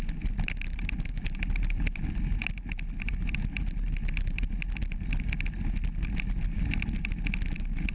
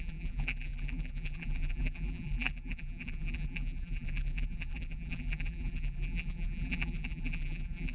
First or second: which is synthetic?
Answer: second